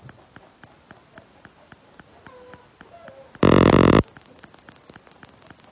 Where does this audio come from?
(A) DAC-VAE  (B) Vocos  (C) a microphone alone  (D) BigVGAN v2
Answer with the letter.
C